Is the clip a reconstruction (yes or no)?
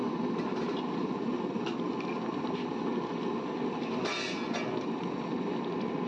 no